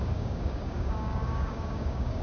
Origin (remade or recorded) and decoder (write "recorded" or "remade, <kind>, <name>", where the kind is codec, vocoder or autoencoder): remade, codec, DAC